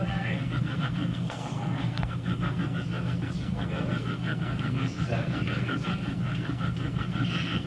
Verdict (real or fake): fake